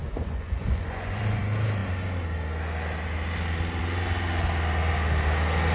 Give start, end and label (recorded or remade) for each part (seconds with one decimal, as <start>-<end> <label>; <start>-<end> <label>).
0.0-1.4 remade; 1.4-5.7 recorded

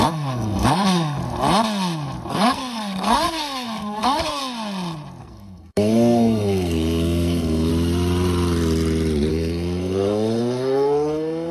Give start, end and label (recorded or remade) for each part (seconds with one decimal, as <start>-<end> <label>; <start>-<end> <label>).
0.0-1.2 remade; 1.2-2.3 recorded; 2.3-4.4 remade; 4.4-5.2 recorded; 5.2-7.7 remade; 7.7-9.3 recorded; 9.3-11.5 remade

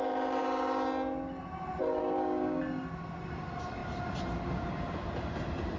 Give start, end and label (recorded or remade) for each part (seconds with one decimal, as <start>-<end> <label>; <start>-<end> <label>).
0.0-2.0 recorded; 2.0-2.6 remade; 2.6-5.8 recorded